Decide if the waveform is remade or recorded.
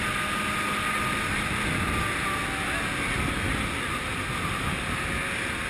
recorded